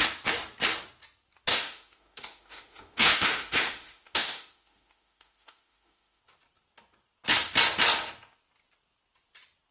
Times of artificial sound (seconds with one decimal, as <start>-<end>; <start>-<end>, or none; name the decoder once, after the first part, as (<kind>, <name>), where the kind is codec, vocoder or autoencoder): 1.5-6.2 (autoencoder, DAC-VAE)